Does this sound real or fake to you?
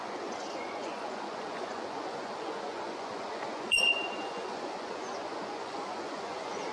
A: fake